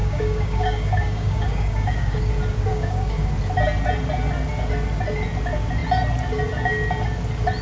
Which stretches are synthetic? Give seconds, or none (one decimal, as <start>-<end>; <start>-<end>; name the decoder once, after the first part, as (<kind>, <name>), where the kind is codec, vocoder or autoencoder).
0.0-2.3 (codec, DAC); 2.7-3.3